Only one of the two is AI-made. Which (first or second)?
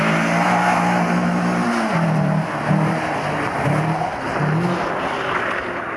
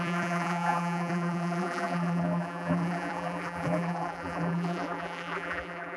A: second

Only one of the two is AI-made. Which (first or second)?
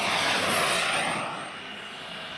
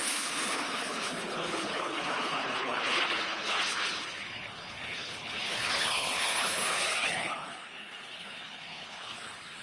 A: second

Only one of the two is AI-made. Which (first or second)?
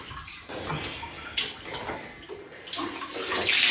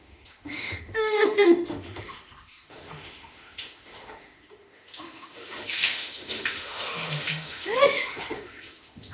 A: second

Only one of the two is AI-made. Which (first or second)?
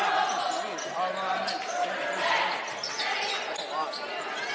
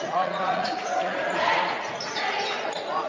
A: second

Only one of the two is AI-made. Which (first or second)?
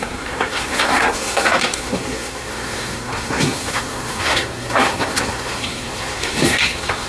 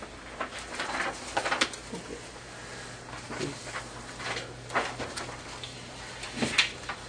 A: first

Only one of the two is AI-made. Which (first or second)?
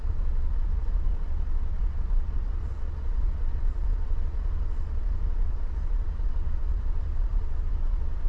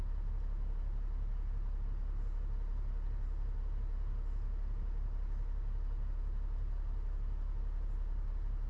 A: first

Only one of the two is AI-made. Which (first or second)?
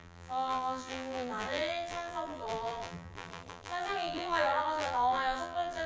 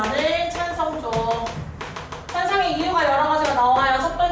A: first